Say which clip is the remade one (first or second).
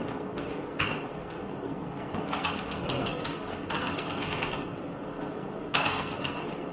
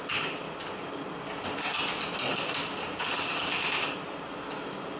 first